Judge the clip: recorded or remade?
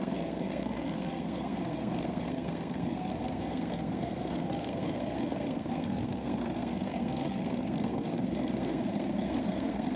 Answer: remade